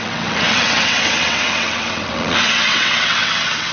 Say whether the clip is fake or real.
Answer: fake